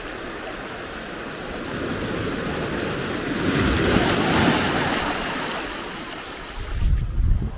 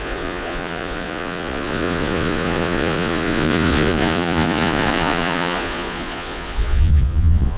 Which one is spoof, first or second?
second